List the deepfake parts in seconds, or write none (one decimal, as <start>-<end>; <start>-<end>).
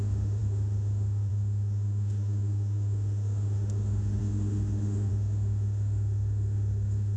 0.0-7.2